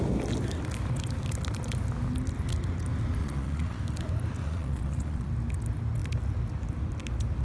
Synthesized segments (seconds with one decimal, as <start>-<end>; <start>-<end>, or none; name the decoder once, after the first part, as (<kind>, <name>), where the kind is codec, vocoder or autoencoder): 3.2-3.8 (vocoder, Vocos); 4.4-5.3